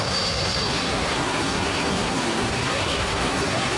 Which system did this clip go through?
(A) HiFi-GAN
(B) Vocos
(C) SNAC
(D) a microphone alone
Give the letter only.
C